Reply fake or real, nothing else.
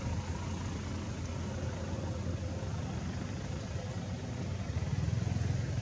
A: real